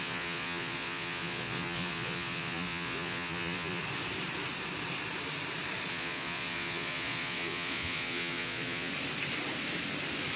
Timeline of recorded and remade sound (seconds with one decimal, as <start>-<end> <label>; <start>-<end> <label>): 0.0-3.8 remade; 3.8-5.9 recorded; 5.9-8.9 remade; 8.9-10.4 recorded